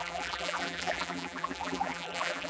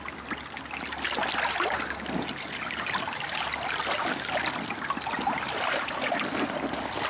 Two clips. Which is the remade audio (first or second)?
first